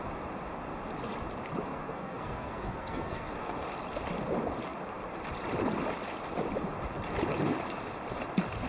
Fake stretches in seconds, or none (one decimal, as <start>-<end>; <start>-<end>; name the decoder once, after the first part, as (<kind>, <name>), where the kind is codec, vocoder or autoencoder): 1.7-3.5 (codec, SNAC)